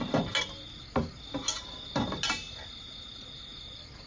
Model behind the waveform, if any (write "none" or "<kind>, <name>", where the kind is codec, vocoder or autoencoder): none